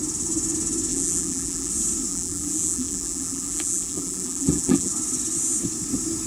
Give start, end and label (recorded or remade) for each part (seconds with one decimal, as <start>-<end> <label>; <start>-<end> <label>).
0.0-0.9 recorded; 0.9-1.7 remade; 1.7-2.1 recorded; 2.1-4.9 remade; 4.9-6.3 recorded